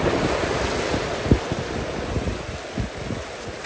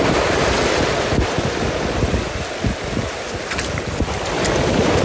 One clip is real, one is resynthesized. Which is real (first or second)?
first